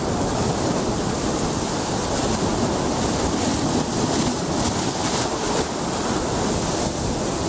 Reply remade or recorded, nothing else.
recorded